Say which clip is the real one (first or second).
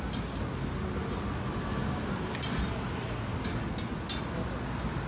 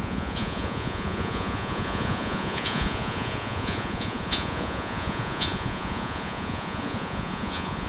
first